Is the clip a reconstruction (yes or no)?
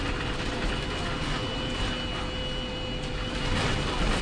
no